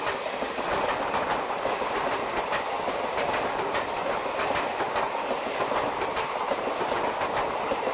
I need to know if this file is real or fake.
real